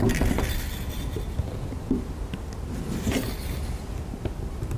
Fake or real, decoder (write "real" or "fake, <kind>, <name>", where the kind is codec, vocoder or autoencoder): real